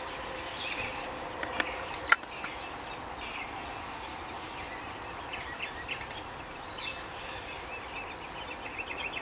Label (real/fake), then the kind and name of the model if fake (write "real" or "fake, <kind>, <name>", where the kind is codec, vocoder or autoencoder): real